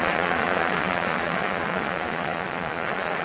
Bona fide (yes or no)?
no